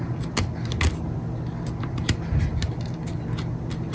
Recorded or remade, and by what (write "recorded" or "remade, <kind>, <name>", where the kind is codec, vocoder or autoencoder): recorded